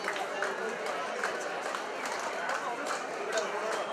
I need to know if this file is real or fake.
real